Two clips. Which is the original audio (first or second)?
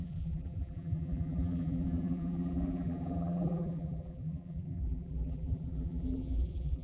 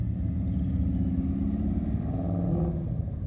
second